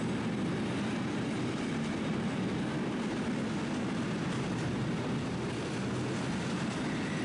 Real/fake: real